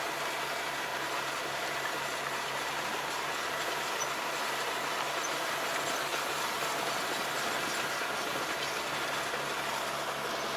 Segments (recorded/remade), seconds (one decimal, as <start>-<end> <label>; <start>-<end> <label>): 0.0-0.9 recorded; 0.9-5.5 remade; 5.5-6.1 recorded; 6.1-7.0 remade; 7.0-10.6 recorded